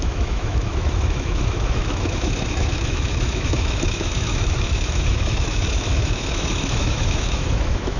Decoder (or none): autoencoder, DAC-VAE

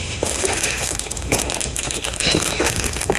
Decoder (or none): autoencoder, DAC-VAE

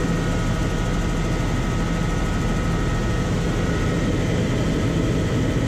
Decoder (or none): none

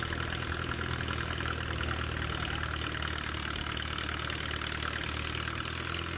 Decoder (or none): none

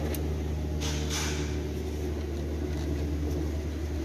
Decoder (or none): none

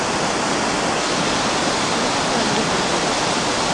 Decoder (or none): none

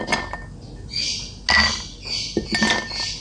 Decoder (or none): none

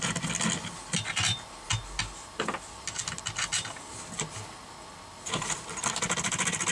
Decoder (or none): none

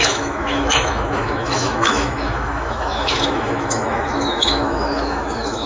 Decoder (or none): autoencoder, DAC-VAE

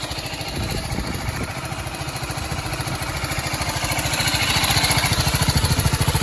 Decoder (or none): none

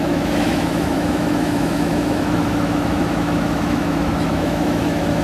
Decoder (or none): autoencoder, DAC-VAE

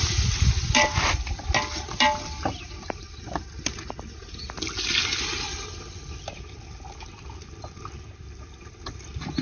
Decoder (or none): none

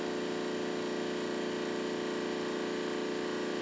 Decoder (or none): none